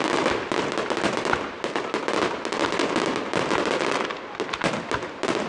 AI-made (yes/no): no